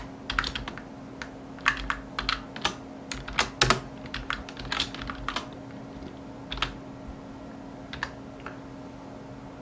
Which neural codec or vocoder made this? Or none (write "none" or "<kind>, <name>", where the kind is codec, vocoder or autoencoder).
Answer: none